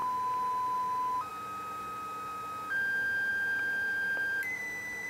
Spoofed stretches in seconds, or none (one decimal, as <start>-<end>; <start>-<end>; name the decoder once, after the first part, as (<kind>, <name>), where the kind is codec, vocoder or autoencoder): 3.3-5.1 (vocoder, BigVGAN v2)